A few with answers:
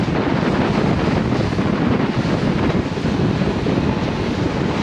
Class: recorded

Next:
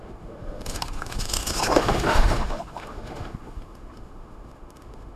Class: remade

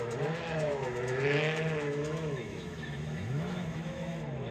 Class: remade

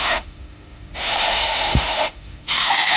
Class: remade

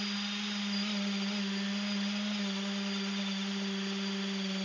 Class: recorded